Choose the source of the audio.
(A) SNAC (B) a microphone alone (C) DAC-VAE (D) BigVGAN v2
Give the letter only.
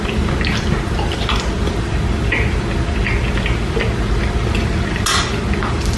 B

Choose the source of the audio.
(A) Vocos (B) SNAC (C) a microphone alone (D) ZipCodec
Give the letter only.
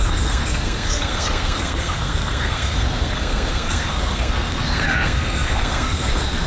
B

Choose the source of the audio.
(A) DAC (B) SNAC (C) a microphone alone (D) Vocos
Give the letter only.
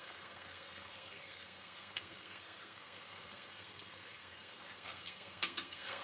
B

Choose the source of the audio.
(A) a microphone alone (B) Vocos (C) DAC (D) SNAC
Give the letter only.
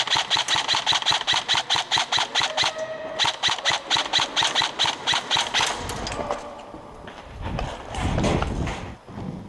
A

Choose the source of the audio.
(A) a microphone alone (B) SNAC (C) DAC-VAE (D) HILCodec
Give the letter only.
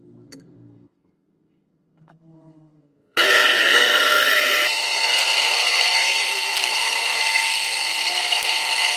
B